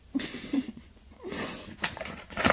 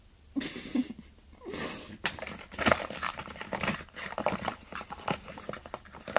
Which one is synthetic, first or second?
first